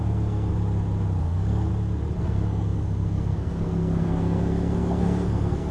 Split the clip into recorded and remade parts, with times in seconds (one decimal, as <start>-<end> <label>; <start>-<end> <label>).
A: 0.0-0.5 remade; 0.5-1.2 recorded; 1.2-1.7 remade; 1.7-2.2 recorded; 2.2-5.7 remade